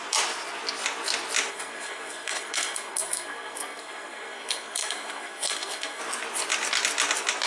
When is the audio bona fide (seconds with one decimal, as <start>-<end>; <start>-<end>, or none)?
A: 0.0-1.5; 6.0-7.5